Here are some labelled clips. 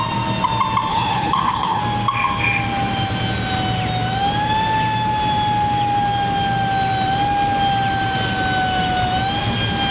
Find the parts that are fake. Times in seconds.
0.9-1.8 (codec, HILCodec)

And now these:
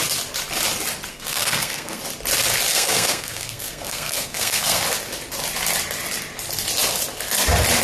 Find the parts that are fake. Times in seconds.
1.1-2.0 (codec, SNAC); 2.7-4.8

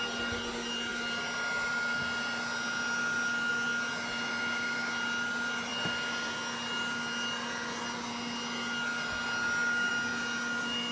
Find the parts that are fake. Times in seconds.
none

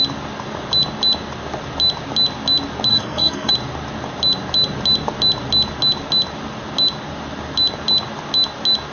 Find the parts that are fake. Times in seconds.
2.9-3.5 (codec, SNAC)

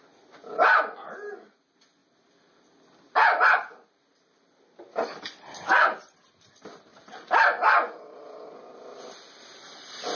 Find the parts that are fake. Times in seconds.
6.9-7.9 (vocoder, BigVGAN v2)